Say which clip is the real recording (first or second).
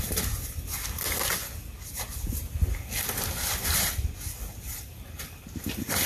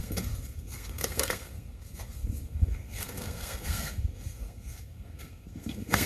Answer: first